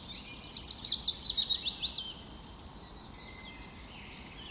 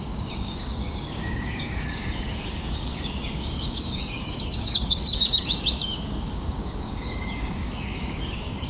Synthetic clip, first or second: second